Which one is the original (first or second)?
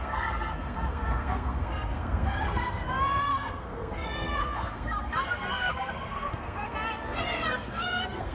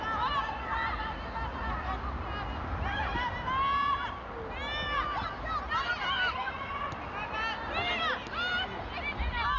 second